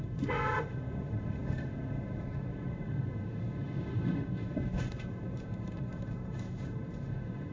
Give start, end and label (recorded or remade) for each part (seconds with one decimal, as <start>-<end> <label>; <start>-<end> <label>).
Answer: 0.0-7.5 remade